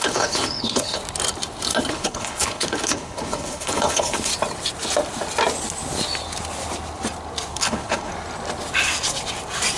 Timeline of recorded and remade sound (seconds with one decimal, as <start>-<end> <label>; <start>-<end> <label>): 0.0-1.0 remade; 1.0-1.9 recorded; 1.9-4.3 remade; 4.3-7.5 recorded; 7.5-8.1 remade; 8.1-9.8 recorded